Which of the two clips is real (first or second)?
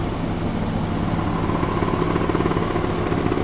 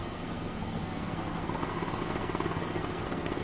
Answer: first